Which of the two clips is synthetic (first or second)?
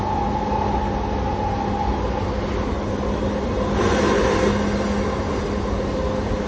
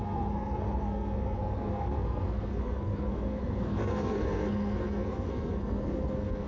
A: second